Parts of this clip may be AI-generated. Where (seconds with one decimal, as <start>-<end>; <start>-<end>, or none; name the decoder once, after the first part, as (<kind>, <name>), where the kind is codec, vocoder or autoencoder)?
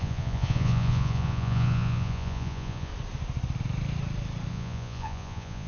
0.0-2.9 (vocoder, Vocos); 4.5-5.7